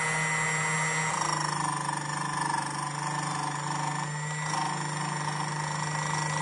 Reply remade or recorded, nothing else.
recorded